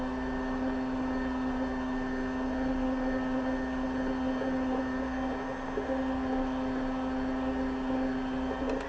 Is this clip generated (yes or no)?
no